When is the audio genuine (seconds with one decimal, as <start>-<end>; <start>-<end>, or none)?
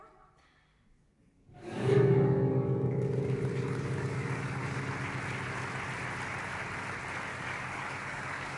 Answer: 0.0-0.7; 4.8-7.3